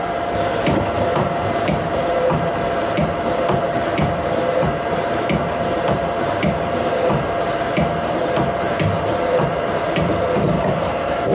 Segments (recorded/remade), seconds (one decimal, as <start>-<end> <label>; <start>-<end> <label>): 0.0-2.5 remade; 2.5-3.4 recorded; 3.4-11.3 remade